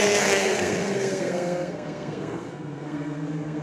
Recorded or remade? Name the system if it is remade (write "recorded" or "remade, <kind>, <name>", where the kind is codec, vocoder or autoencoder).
remade, codec, SNAC